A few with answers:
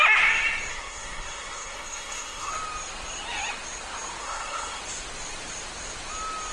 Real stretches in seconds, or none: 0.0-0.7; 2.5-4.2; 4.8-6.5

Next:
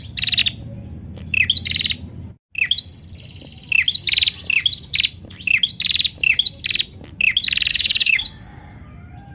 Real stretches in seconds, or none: 0.0-7.7; 8.2-9.3

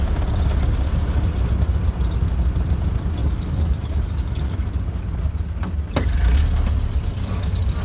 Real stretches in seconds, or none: 0.0-3.2; 4.7-7.1

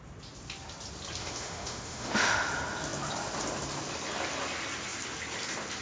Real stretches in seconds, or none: 0.0-1.2; 2.5-5.8

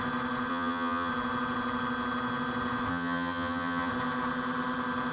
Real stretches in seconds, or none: 0.0-0.5; 1.1-2.9; 3.9-5.1

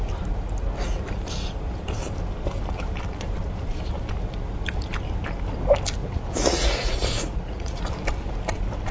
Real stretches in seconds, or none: 0.0-6.0; 7.8-8.9